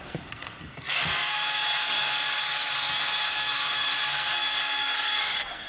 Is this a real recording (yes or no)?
no